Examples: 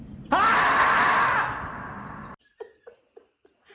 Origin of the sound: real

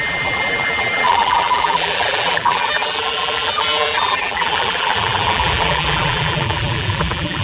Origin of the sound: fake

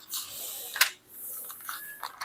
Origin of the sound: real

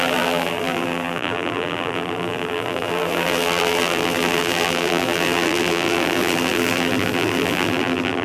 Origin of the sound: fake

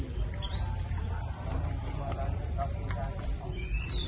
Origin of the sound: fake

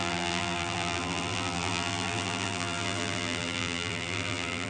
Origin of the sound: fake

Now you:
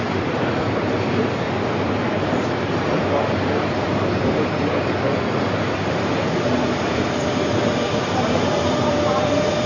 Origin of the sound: fake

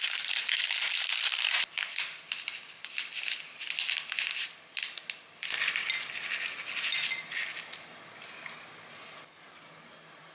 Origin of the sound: real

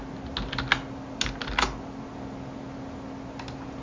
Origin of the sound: real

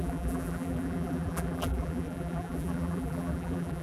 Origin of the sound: fake